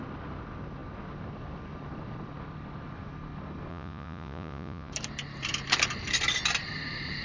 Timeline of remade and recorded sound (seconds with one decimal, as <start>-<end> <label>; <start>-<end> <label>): 0.0-3.7 recorded; 3.7-4.9 remade; 4.9-7.2 recorded